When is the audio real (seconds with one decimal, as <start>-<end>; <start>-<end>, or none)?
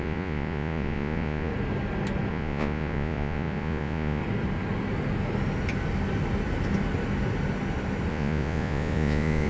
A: 1.5-2.3; 4.2-8.1